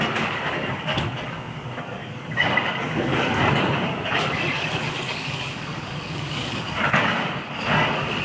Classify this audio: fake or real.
fake